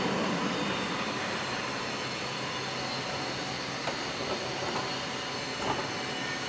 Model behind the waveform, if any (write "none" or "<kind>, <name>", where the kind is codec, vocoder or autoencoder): none